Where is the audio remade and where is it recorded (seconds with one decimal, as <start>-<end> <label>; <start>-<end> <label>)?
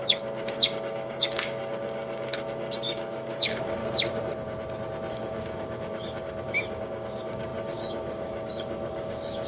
0.0-3.8 remade; 3.8-5.1 recorded; 5.1-9.5 remade